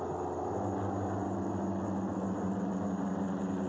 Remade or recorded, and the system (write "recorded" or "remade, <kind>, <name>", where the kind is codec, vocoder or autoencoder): recorded